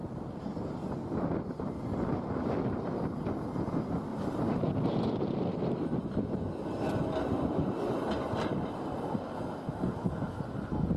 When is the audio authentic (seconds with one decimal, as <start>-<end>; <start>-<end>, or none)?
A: 0.0-4.1; 5.4-11.0